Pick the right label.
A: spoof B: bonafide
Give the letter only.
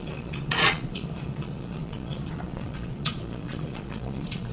A